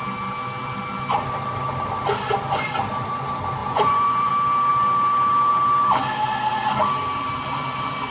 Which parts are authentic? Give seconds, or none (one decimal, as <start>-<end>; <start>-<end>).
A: 0.0-3.6; 4.3-8.1